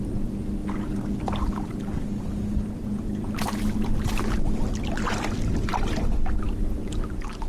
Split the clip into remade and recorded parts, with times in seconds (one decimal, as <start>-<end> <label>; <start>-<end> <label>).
0.0-7.5 recorded